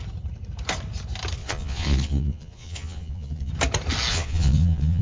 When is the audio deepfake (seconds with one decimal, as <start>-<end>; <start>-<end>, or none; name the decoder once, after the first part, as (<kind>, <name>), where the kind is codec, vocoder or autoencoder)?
1.4-3.5 (vocoder, Vocos); 4.1-5.0